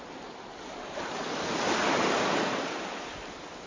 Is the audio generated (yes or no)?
no